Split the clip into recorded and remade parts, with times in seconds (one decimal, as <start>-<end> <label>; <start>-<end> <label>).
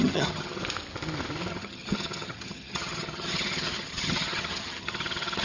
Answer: 0.0-0.6 remade; 0.6-1.5 recorded; 1.5-5.4 remade